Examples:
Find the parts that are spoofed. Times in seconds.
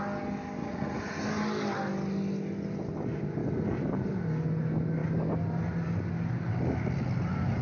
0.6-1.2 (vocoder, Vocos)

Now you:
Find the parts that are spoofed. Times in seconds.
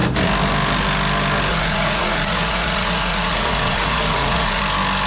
1.5-4.6 (vocoder, Vocos)